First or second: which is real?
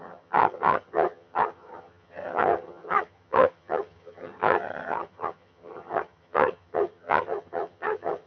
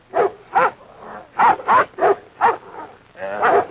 second